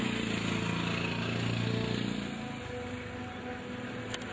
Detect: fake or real real